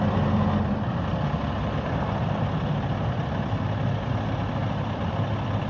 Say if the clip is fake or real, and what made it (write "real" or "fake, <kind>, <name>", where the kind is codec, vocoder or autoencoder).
real